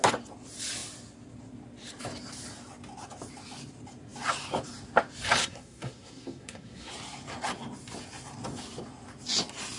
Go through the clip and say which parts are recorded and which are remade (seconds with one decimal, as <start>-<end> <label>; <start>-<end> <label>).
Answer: 0.0-5.4 recorded; 5.4-6.9 remade; 6.9-9.8 recorded